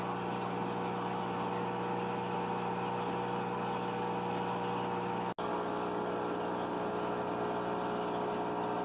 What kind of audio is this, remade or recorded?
recorded